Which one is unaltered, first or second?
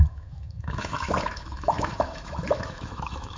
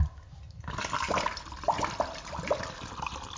second